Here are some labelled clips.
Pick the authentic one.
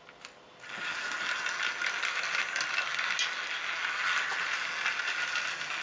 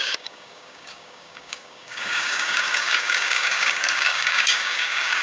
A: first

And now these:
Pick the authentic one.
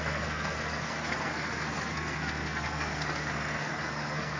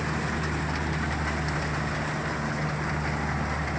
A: second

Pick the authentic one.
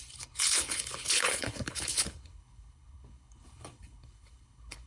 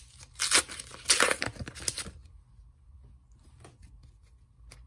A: second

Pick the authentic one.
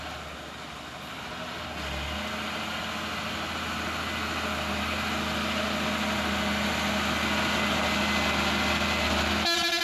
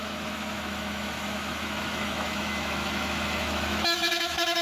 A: first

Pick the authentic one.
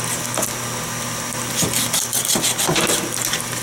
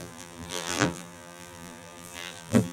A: first